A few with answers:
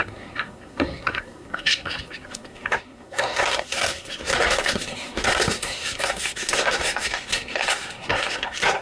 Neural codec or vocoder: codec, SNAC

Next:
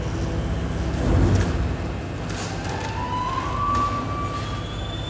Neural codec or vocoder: none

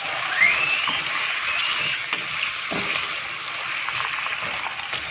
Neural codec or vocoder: none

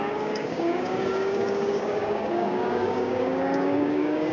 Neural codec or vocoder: codec, DAC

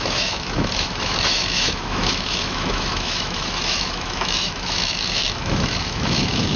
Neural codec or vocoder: autoencoder, DAC-VAE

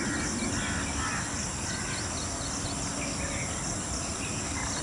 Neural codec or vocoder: none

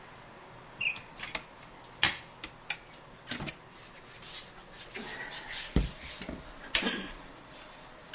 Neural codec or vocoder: none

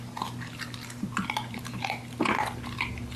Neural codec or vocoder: none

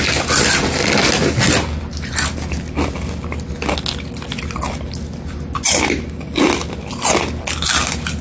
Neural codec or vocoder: none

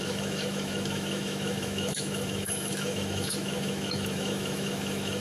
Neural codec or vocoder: autoencoder, DAC-VAE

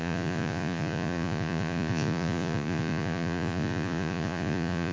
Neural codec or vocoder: vocoder, Vocos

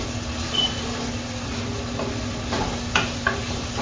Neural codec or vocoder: none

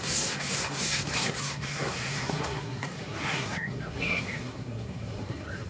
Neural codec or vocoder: codec, SNAC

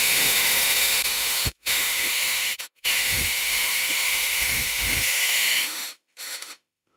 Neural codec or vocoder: autoencoder, DAC-VAE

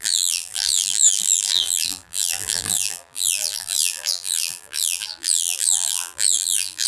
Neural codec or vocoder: vocoder, BigVGAN v2